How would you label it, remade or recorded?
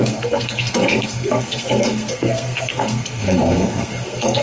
remade